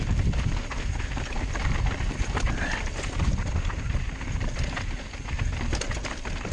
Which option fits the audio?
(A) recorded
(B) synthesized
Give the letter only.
A